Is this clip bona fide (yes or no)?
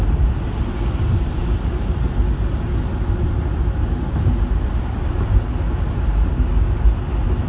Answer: yes